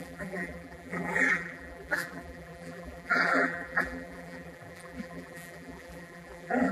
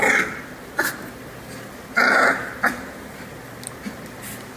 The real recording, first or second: second